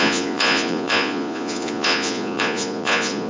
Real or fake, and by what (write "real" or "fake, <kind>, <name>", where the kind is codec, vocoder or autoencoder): fake, vocoder, Vocos